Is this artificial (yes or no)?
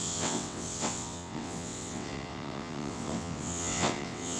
yes